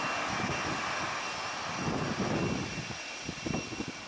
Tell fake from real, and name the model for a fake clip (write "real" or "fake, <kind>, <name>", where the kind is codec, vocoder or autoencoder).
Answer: real